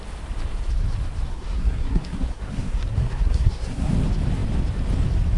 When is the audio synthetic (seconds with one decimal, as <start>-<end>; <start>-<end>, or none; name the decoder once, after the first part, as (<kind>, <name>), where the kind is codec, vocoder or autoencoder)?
1.3-3.9 (codec, SNAC)